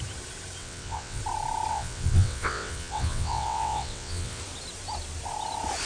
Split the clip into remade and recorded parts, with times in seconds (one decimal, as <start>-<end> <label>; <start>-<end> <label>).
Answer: 0.0-0.6 recorded; 0.6-1.2 remade; 1.2-1.7 recorded; 1.7-4.4 remade; 4.4-5.9 recorded